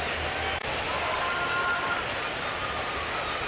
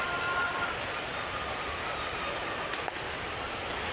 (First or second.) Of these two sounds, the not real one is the second